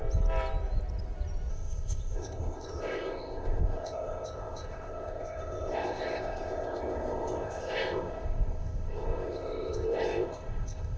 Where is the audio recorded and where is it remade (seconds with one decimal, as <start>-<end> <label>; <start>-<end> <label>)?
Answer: 0.0-1.5 recorded; 1.5-11.0 remade